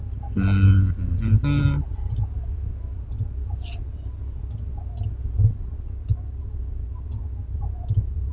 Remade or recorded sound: recorded